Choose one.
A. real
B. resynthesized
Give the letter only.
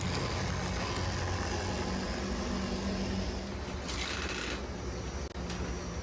A